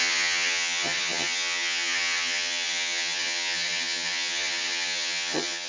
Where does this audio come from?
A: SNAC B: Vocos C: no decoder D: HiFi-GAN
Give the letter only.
D